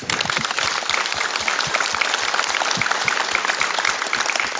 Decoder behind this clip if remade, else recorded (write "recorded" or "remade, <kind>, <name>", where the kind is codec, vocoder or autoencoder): recorded